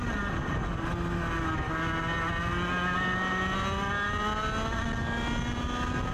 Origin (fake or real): real